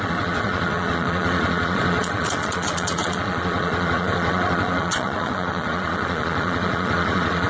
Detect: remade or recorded remade